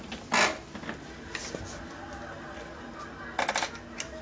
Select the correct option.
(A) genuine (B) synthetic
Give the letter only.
A